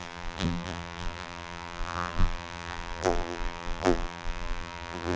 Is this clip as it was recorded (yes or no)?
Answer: no